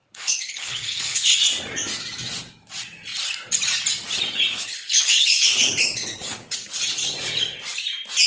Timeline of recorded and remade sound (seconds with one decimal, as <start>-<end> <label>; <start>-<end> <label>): 0.0-1.4 remade; 1.4-4.5 recorded; 4.5-6.8 remade; 6.8-8.3 recorded